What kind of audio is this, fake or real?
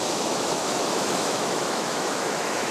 fake